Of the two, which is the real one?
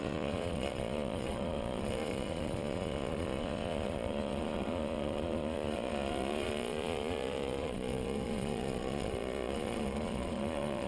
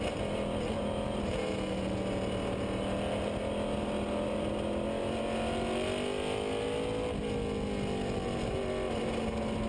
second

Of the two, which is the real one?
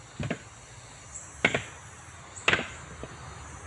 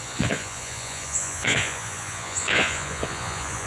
first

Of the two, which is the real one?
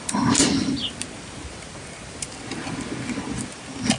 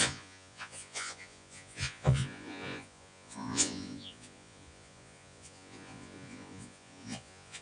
first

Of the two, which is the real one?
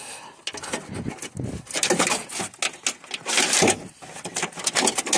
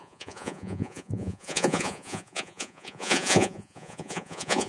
first